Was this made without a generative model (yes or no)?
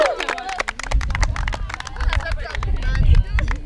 yes